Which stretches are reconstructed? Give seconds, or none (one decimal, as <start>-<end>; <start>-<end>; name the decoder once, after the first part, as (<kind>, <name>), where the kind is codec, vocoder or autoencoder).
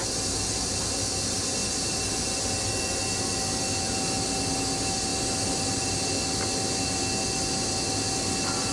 none